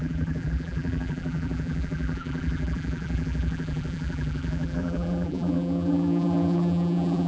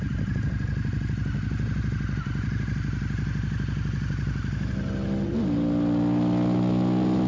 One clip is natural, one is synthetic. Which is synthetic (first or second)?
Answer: first